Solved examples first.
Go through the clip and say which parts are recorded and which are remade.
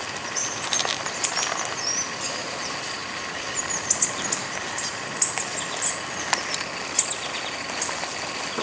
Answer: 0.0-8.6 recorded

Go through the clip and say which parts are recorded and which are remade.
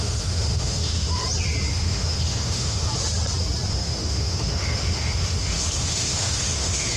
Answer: 0.0-1.2 remade; 1.2-1.7 recorded; 1.7-2.9 remade; 2.9-3.7 recorded; 3.7-7.0 remade